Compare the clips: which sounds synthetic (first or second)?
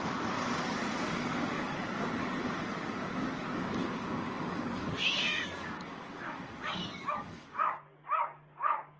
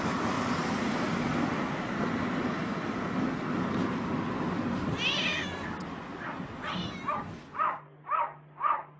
first